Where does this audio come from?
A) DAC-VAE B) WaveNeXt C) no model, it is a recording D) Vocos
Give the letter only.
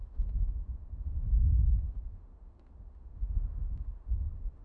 A